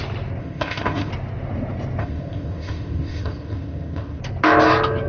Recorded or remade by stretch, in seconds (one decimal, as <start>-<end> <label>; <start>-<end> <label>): 0.0-0.4 recorded; 0.4-1.1 remade; 1.1-2.0 recorded; 2.0-4.2 remade; 4.2-5.1 recorded

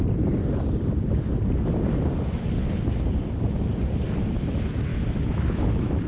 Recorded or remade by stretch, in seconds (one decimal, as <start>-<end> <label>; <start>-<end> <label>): 0.0-4.9 recorded; 4.9-6.1 remade

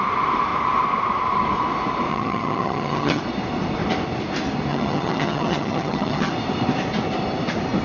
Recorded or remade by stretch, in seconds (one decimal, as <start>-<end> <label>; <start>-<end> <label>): 0.0-2.1 recorded; 2.1-3.2 remade; 3.2-4.7 recorded; 4.7-6.3 remade; 6.3-7.8 recorded

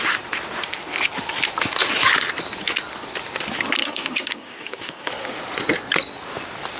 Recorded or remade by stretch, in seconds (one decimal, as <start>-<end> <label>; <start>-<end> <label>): 0.0-3.8 recorded; 3.8-5.1 remade; 5.1-6.8 recorded

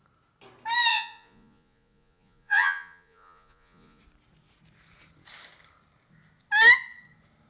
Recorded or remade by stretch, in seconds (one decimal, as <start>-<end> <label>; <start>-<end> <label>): 0.0-0.9 recorded; 0.9-4.0 remade; 4.0-7.5 recorded

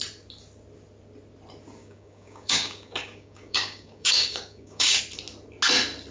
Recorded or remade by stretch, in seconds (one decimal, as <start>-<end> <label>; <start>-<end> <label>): 0.0-1.8 recorded; 1.8-5.0 remade; 5.0-6.1 recorded

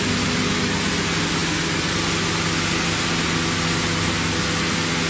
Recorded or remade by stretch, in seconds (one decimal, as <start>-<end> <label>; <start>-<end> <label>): 0.0-5.1 recorded